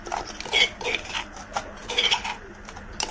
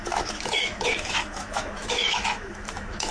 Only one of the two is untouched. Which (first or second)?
first